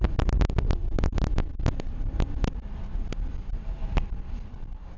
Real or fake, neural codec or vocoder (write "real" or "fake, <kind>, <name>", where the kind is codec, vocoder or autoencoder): real